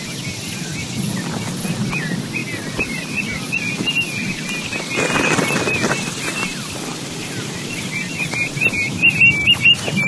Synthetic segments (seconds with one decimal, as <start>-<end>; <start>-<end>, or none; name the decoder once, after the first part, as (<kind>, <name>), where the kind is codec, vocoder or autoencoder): 0.7-1.6 (vocoder, BigVGAN v2); 2.4-3.7; 4.2-8.7